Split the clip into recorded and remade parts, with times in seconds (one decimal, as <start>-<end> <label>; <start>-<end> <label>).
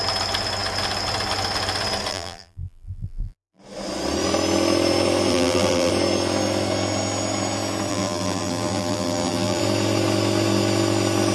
0.0-2.1 recorded; 2.1-3.6 remade; 3.6-5.3 recorded; 5.3-5.9 remade; 5.9-7.9 recorded; 7.9-9.6 remade; 9.6-11.3 recorded